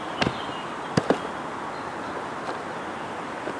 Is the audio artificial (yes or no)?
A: no